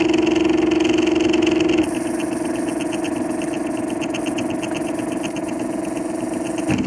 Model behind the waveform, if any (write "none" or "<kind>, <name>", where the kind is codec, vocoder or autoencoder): none